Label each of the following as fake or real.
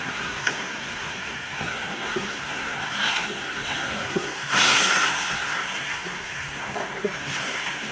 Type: fake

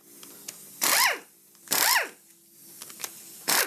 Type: real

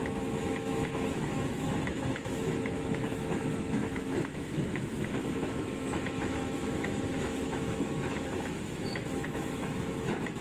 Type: fake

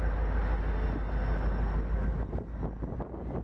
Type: real